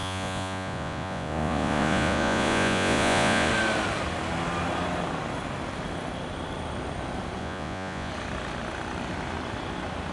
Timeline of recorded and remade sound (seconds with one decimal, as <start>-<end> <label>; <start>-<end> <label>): 0.0-3.5 remade; 3.5-7.4 recorded; 7.4-8.1 remade; 8.1-10.1 recorded